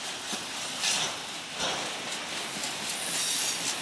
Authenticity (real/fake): real